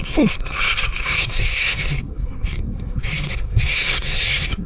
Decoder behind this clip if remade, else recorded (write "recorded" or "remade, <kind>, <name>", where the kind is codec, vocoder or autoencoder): remade, codec, SNAC